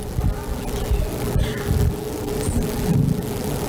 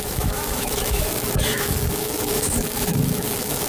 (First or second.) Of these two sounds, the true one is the first